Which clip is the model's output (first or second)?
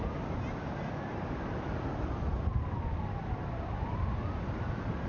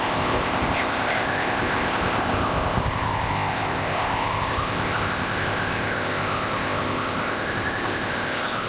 second